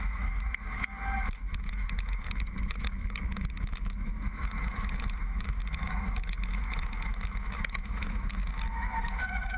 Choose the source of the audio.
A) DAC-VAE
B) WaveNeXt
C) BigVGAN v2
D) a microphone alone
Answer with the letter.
A